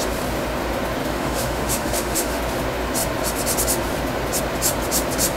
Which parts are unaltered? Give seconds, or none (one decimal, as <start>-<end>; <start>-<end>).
0.0-1.0; 2.4-5.4